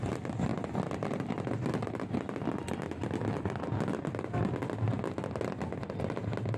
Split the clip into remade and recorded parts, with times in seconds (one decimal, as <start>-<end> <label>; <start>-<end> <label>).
0.0-6.6 recorded